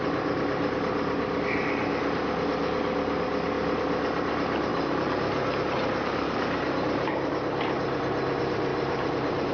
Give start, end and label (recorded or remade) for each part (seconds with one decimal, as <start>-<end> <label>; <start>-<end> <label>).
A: 0.0-4.7 recorded; 4.7-7.3 remade; 7.3-8.7 recorded; 8.7-9.5 remade